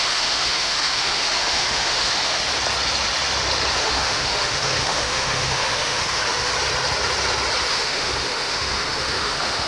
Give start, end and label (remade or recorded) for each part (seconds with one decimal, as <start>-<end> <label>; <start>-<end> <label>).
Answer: 0.0-2.4 remade; 2.4-3.8 recorded; 3.8-6.5 remade; 6.5-7.7 recorded; 7.7-9.7 remade